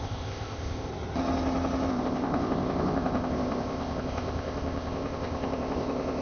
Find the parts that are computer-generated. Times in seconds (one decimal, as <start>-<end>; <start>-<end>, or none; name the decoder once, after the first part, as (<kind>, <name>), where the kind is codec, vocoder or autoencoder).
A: 0.0-0.9 (codec, ZipCodec); 1.9-6.2